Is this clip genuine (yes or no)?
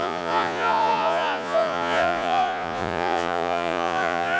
no